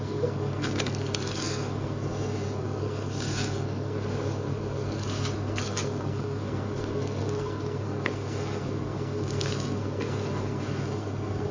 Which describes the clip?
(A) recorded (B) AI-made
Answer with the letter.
B